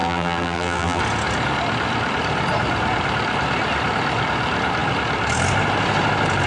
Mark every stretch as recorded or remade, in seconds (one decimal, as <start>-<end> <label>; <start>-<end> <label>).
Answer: 0.0-1.0 remade; 1.0-6.5 recorded